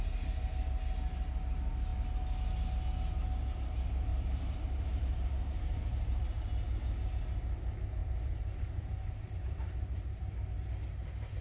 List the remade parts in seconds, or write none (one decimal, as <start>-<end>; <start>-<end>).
4.1-6.2; 8.0-11.4